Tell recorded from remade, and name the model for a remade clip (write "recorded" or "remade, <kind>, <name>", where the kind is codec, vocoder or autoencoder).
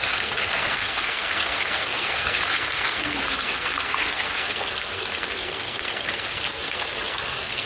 remade, codec, SNAC